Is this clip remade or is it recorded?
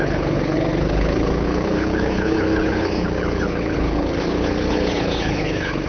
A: remade